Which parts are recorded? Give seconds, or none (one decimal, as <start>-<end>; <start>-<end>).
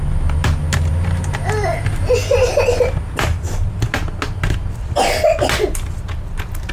0.0-6.7